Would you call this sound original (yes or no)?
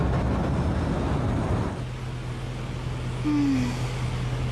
yes